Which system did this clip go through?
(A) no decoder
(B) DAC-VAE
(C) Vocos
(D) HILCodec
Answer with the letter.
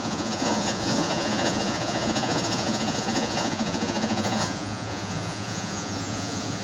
C